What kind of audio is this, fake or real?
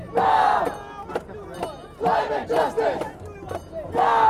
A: real